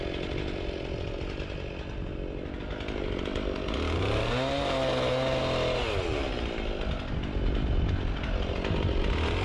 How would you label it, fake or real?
real